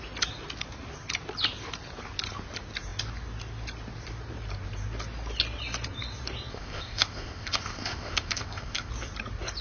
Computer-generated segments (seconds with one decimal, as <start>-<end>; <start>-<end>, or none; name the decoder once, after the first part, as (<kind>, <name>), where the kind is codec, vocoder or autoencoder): 6.5-8.9 (codec, ZipCodec)